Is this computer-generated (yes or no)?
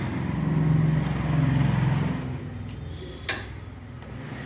no